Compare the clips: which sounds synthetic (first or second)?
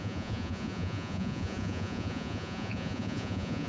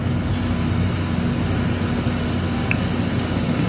first